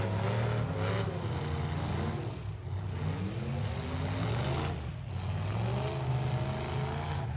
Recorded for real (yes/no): yes